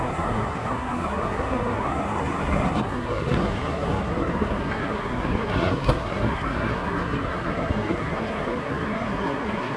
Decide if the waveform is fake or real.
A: fake